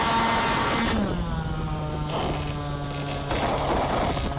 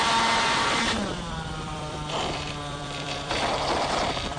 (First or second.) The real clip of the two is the first